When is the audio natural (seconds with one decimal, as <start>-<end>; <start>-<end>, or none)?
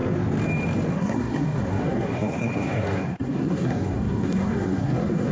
0.0-0.9